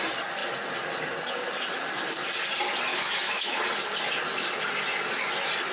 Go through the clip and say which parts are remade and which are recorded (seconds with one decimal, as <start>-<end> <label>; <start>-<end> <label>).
0.0-2.9 recorded; 2.9-3.6 remade; 3.6-5.7 recorded